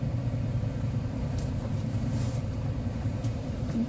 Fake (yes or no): yes